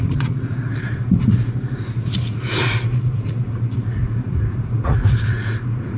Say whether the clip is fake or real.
fake